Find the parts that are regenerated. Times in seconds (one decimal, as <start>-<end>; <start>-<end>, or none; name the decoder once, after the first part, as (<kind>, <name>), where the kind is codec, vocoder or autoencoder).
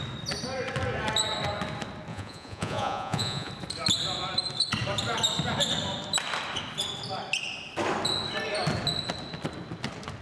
2.1-3.5 (vocoder, Vocos)